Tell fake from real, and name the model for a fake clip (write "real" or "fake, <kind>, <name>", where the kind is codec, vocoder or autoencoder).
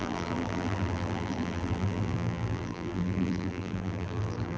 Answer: fake, vocoder, BigVGAN v2